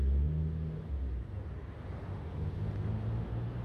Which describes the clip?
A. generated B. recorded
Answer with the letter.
B